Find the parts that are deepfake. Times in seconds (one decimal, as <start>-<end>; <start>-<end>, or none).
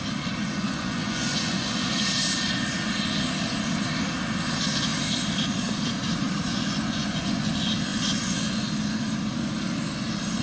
0.4-2.0; 6.5-7.5; 7.9-8.7